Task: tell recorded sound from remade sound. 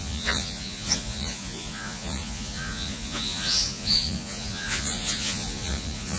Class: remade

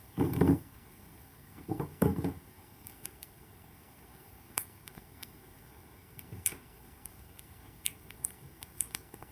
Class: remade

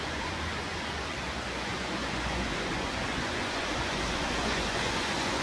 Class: remade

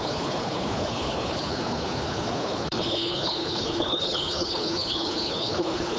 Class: remade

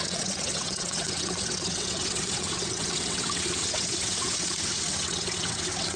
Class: remade